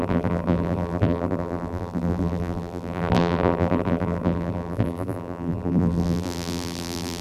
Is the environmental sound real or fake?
fake